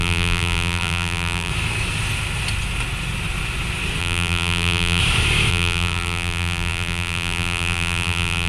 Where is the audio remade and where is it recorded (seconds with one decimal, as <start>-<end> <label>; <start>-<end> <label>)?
0.0-1.5 remade; 1.5-4.0 recorded; 4.0-5.0 remade; 5.0-5.5 recorded; 5.5-8.5 remade